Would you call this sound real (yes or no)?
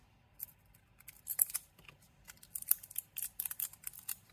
yes